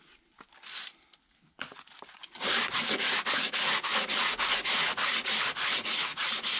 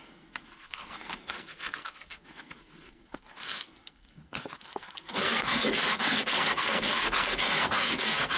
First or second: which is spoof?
second